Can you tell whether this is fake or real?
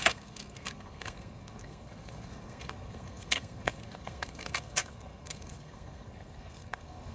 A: fake